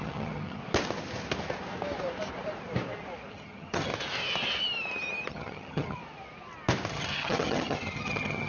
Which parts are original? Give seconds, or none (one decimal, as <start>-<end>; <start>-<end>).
0.6-3.3; 3.9-5.3; 6.0-6.9